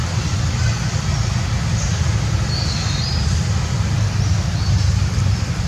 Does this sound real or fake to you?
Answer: real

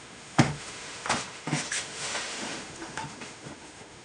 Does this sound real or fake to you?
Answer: fake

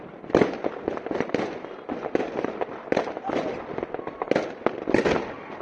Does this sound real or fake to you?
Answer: real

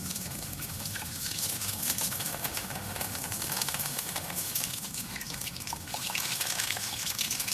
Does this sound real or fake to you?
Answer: fake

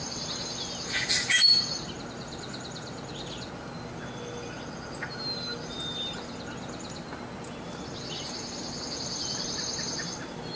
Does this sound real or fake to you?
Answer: real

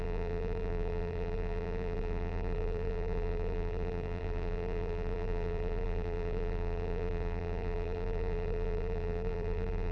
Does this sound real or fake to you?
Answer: fake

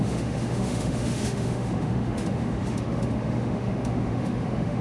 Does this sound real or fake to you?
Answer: fake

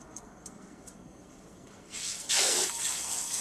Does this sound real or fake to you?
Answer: fake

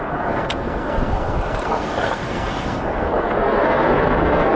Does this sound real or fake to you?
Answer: fake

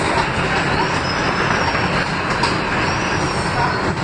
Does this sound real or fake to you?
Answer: real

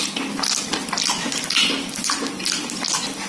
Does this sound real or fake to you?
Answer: real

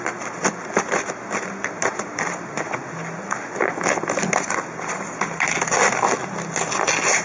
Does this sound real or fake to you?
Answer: real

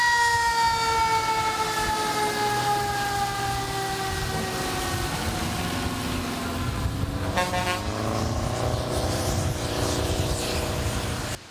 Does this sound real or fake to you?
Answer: real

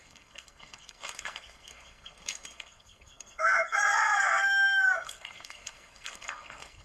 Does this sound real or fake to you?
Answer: fake